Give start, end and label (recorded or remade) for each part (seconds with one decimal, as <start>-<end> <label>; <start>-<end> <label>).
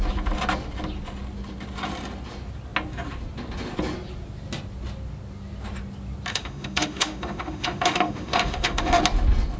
0.0-6.3 recorded; 6.3-9.0 remade; 9.0-9.6 recorded